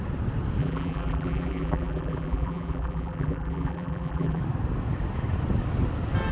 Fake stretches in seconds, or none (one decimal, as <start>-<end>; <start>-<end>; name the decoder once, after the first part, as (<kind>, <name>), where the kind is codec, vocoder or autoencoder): 0.6-4.4 (vocoder, BigVGAN v2)